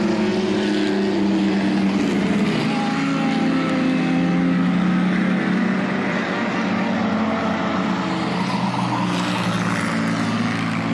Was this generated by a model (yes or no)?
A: no